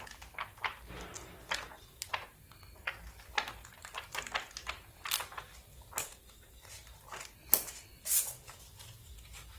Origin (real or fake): real